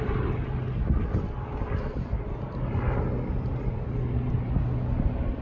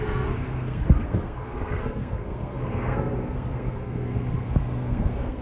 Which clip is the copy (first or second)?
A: second